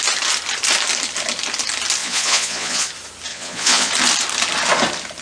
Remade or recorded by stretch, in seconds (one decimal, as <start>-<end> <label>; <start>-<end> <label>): 0.0-2.0 recorded; 2.0-2.9 remade; 2.9-3.3 recorded; 3.3-3.9 remade; 3.9-5.2 recorded